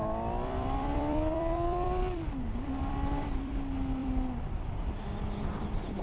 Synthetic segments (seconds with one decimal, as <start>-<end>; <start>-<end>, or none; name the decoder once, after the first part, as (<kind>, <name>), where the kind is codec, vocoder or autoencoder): 0.0-3.6 (vocoder, BigVGAN v2); 4.0-4.7